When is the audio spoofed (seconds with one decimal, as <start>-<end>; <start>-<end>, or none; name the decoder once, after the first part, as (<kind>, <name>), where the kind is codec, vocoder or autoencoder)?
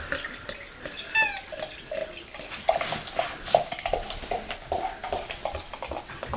none